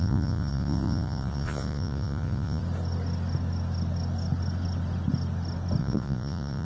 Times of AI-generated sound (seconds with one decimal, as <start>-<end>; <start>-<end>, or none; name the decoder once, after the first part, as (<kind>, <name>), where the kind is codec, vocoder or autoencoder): 0.0-2.6 (vocoder, Vocos); 5.8-6.6